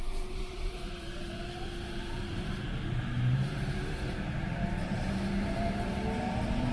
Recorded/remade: remade